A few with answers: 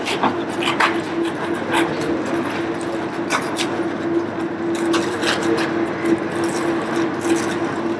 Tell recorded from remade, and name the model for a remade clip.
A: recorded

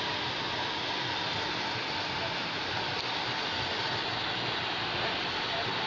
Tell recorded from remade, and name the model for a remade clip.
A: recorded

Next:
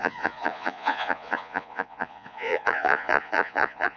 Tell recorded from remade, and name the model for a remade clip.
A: remade, vocoder, Vocos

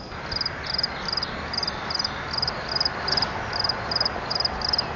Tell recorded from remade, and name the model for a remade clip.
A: recorded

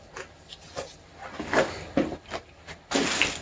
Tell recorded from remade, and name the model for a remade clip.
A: recorded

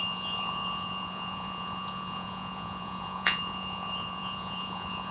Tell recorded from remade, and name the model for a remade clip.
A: remade, vocoder, Vocos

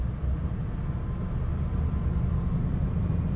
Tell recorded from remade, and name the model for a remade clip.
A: recorded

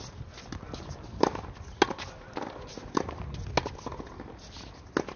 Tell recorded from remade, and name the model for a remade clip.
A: recorded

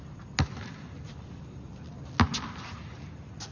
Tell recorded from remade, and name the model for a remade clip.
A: recorded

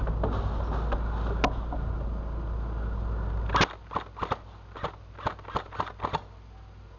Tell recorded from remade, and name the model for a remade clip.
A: recorded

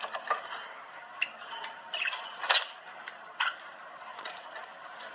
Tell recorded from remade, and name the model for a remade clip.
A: recorded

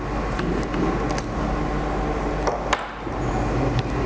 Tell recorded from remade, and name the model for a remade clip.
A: recorded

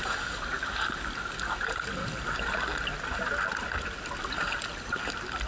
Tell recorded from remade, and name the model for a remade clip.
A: recorded